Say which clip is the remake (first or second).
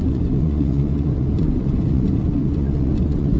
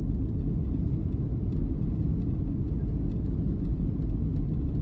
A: first